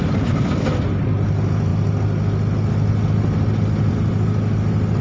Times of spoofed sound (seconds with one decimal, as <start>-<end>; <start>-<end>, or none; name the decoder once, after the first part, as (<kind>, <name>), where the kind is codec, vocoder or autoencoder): none

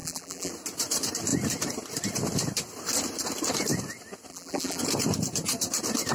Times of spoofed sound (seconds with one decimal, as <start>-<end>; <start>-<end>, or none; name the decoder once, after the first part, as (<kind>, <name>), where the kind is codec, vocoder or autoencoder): 0.0-0.5 (vocoder, BigVGAN v2); 4.3-4.8

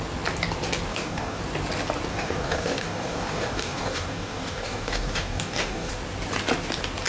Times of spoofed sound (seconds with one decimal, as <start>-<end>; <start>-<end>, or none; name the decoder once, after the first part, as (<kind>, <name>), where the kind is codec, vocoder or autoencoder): 0.9-1.4 (codec, DAC); 2.1-5.9